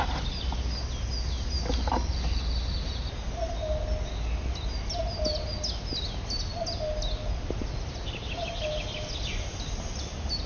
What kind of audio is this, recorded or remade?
recorded